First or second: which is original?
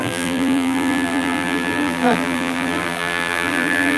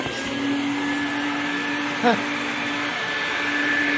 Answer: second